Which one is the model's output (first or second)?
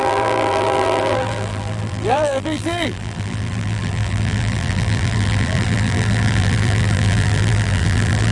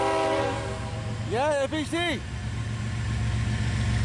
first